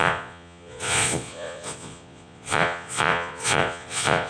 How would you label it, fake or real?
fake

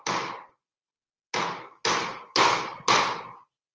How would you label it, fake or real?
real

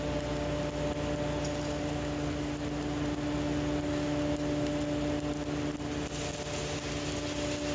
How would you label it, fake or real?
real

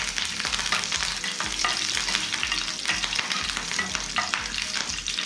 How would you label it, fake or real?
real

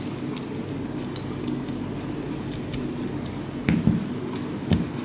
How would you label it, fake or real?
real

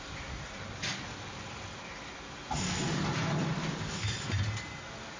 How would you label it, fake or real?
real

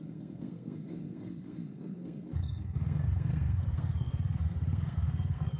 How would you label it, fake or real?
fake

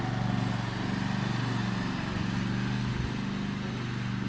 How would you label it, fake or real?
real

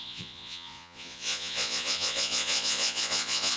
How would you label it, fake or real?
fake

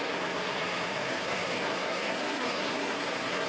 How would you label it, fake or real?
fake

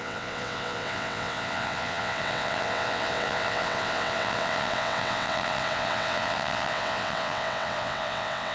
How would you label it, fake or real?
fake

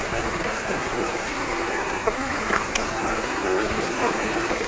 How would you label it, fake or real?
fake